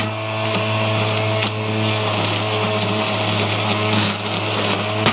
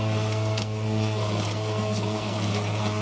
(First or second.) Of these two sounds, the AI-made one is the second